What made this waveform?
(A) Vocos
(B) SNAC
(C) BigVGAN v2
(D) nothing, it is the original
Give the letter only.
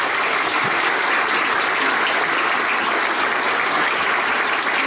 D